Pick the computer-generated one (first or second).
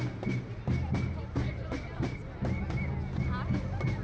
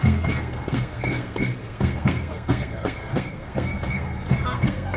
second